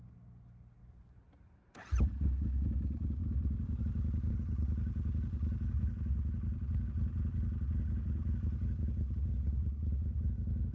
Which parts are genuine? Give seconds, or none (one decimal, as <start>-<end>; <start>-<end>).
0.0-0.8; 2.0-10.7